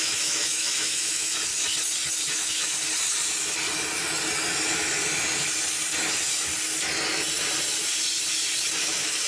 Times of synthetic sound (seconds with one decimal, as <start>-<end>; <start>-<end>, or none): 0.0-1.5; 2.3-2.8; 6.0-6.5; 8.8-9.3